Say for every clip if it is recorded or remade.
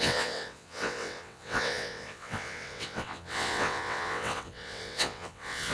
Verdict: remade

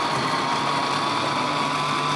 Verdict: recorded